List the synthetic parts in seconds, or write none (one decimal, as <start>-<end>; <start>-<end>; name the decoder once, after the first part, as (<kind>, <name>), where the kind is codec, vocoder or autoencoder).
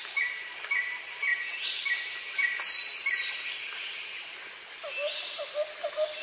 none